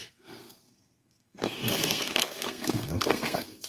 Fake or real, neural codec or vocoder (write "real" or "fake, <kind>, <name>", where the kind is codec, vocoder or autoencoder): fake, codec, SNAC